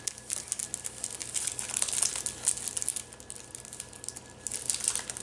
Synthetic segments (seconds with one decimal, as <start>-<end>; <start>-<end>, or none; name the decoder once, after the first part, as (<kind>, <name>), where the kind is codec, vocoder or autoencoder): none